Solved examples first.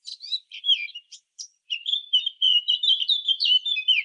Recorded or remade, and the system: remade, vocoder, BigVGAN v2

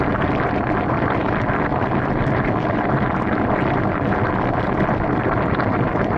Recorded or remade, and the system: recorded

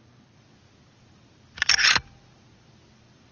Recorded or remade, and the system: remade, vocoder, BigVGAN v2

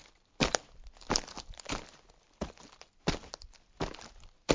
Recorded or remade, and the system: recorded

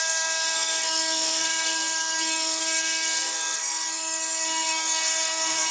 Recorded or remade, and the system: remade, codec, SNAC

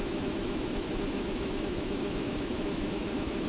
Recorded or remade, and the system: remade, autoencoder, DAC-VAE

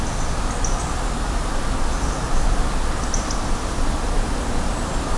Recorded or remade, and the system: recorded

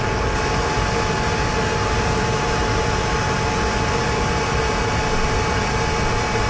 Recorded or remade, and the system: recorded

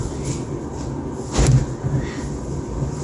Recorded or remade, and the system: recorded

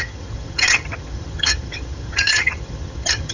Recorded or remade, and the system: remade, vocoder, HiFi-GAN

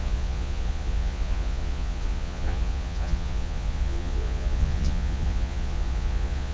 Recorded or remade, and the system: remade, vocoder, Vocos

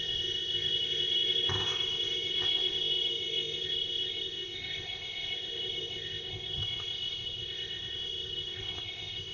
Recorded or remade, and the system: remade, codec, ZipCodec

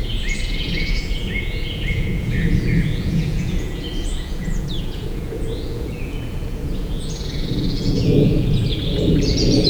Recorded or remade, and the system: remade, vocoder, Vocos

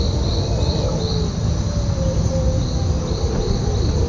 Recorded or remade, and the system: recorded